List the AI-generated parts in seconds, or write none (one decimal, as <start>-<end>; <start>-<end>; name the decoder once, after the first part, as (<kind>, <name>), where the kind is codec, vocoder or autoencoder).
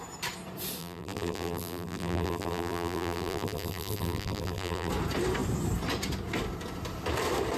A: 0.8-4.9 (vocoder, BigVGAN v2)